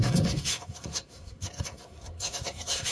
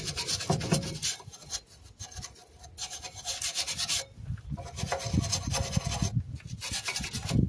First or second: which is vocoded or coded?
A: first